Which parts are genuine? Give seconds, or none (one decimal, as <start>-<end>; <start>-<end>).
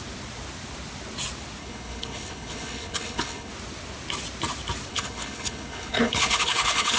0.0-1.6; 3.5-4.9